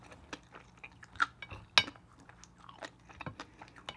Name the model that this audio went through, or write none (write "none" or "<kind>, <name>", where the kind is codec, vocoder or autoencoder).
none